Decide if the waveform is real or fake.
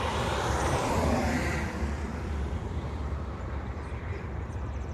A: fake